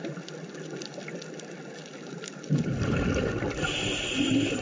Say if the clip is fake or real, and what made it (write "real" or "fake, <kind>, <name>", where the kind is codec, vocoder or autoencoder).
real